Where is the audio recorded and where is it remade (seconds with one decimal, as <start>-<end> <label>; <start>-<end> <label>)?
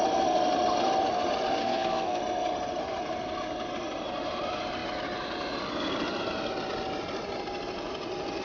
0.0-1.6 recorded; 1.6-2.2 remade; 2.2-8.4 recorded